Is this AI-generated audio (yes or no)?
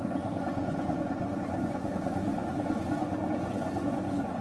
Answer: yes